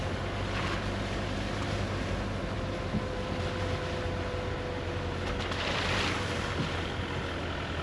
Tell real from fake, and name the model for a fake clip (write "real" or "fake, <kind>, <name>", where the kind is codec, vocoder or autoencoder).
real